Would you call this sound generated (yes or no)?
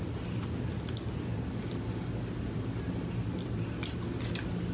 no